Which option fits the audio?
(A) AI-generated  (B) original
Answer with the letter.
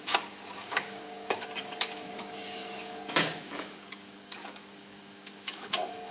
A